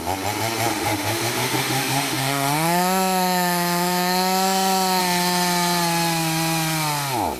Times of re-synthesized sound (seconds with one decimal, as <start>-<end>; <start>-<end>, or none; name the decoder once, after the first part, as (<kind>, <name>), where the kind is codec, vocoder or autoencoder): 0.7-5.0 (autoencoder, DAC-VAE)